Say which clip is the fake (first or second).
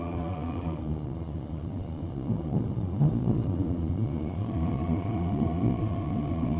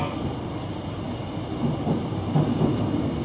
first